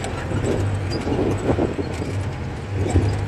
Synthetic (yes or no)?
no